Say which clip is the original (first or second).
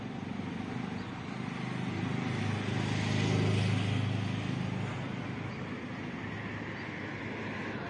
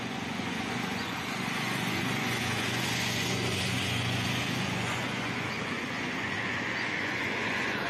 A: first